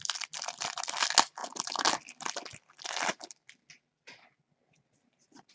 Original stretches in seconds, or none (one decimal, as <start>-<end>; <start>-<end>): 0.0-5.5

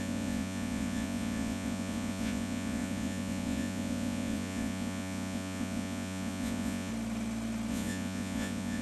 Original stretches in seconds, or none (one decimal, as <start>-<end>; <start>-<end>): 6.9-7.7